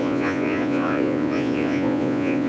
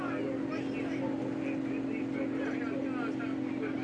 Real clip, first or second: second